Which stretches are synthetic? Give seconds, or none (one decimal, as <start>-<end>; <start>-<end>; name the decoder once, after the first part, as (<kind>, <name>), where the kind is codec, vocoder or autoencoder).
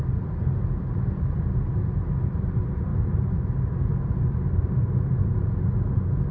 none